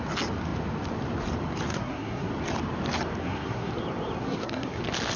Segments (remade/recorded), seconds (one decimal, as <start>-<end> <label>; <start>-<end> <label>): 0.0-1.7 recorded; 1.7-2.3 remade; 2.3-3.2 recorded; 3.2-3.7 remade; 3.7-4.2 recorded; 4.2-4.8 remade; 4.8-5.2 recorded